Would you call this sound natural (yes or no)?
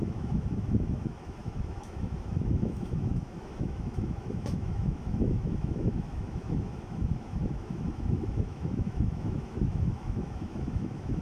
no